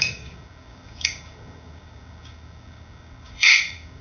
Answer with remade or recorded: remade